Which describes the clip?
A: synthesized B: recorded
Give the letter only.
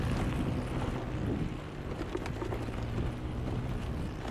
B